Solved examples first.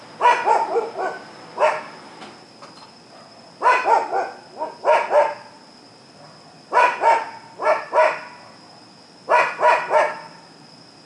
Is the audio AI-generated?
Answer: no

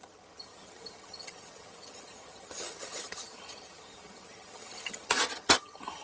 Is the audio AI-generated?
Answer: yes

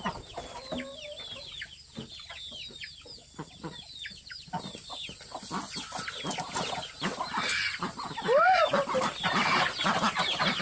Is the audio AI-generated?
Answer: no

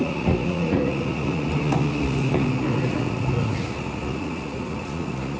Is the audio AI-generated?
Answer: yes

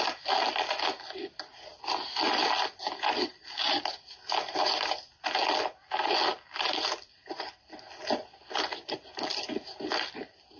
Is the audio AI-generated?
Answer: no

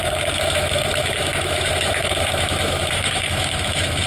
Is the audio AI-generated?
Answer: yes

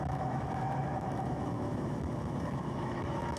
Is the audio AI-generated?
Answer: yes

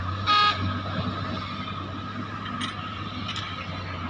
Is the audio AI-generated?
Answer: no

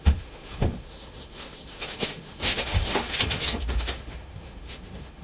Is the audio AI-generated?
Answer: yes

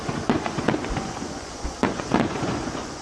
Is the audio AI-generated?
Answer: yes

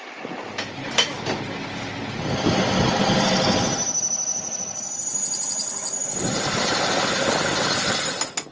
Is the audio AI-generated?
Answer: no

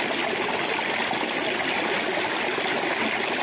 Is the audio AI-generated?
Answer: no